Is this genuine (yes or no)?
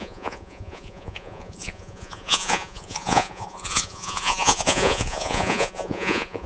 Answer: no